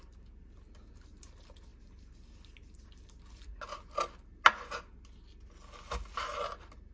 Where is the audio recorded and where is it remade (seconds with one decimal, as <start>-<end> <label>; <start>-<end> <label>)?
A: 0.0-6.9 recorded